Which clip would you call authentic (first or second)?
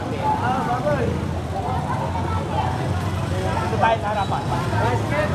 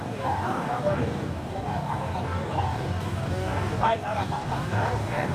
first